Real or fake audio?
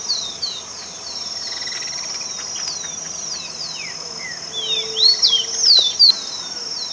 real